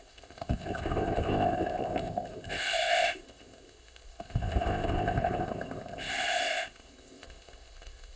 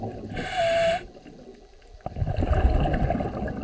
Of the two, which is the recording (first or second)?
second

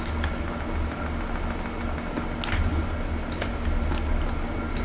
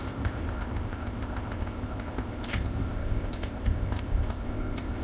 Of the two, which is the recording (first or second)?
first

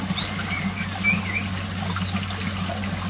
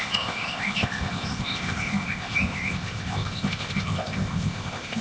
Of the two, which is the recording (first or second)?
first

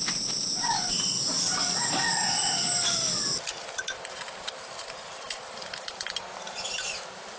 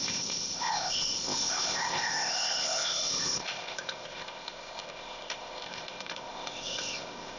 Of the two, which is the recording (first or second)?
first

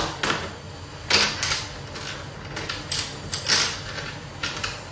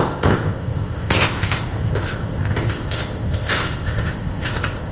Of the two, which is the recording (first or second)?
first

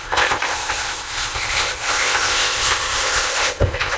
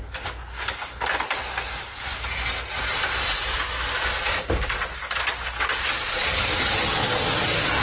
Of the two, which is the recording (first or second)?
second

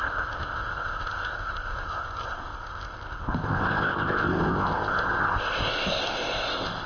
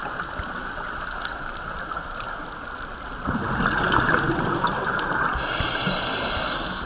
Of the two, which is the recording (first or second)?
second